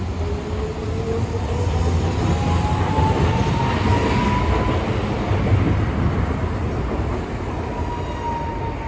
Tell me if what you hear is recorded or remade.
recorded